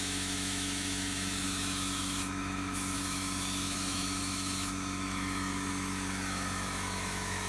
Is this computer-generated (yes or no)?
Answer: yes